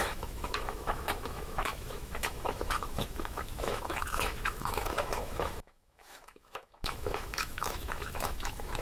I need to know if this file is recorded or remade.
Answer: remade